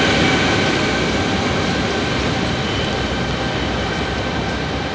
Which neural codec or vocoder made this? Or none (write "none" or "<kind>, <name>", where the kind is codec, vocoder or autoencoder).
none